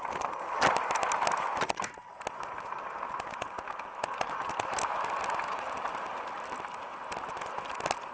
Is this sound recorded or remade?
recorded